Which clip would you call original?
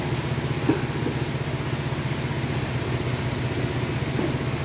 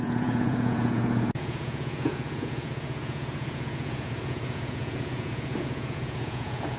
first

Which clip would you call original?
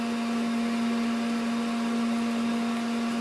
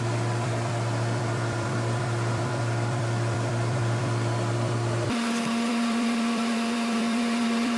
first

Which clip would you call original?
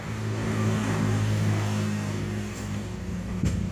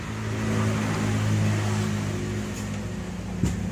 second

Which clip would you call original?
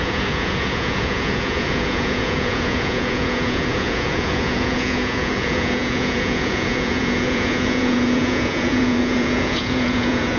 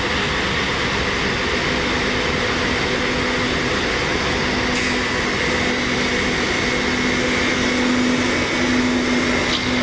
second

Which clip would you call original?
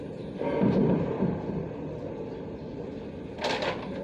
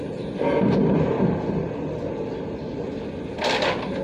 second